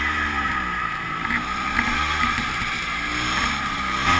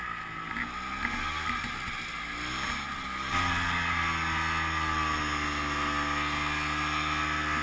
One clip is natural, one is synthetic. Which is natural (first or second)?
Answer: second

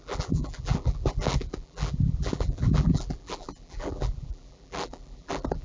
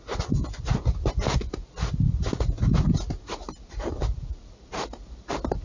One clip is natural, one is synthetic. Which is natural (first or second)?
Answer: second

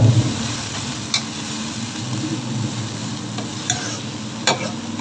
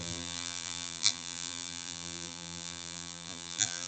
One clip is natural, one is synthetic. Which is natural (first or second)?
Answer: first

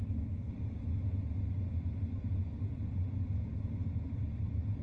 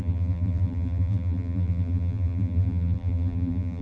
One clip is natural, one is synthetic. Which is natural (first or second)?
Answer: first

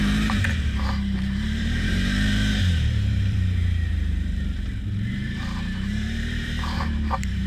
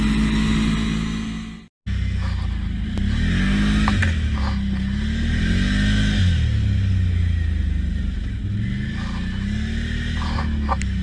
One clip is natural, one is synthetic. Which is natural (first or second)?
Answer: second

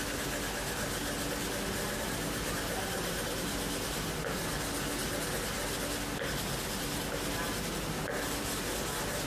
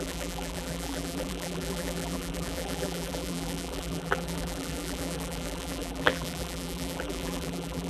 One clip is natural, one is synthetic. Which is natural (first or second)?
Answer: first